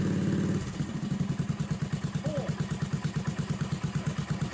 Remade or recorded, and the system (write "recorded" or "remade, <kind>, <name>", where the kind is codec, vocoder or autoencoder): recorded